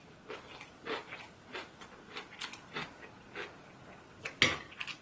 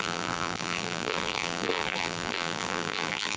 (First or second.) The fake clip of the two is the second